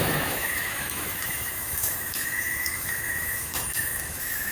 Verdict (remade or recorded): remade